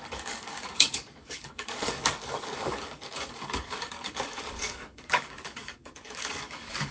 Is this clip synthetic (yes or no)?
yes